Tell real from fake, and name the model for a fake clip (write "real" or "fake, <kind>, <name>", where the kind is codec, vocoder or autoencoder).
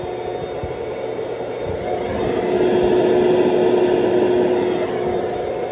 real